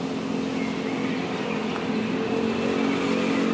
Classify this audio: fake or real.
real